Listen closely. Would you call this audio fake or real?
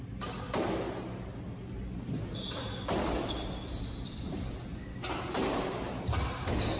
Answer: real